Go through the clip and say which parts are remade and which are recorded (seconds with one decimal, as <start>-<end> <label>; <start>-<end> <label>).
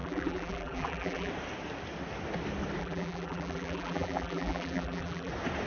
0.0-1.3 remade; 1.3-2.8 recorded; 2.8-5.3 remade; 5.3-5.7 recorded